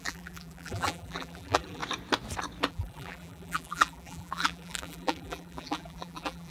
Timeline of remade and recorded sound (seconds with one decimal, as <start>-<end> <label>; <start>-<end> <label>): 0.0-1.8 remade; 1.8-2.7 recorded; 2.7-6.5 remade